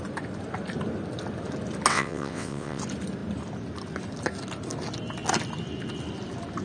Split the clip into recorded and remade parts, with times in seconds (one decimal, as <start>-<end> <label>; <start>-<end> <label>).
0.0-1.9 recorded; 1.9-2.8 remade; 2.8-6.6 recorded